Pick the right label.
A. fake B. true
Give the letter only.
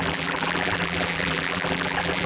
A